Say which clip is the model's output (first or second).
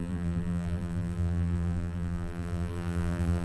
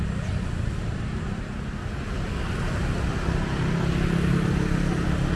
first